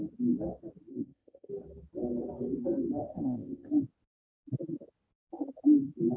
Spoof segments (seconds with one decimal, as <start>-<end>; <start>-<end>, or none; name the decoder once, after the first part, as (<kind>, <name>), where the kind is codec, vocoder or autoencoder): 0.9-1.5 (codec, ZipCodec); 3.1-3.7